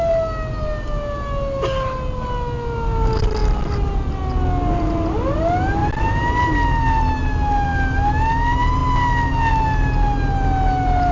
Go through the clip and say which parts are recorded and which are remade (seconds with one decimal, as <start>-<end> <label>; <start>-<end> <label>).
0.0-11.1 recorded